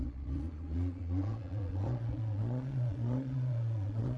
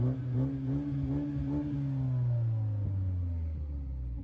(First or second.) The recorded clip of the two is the second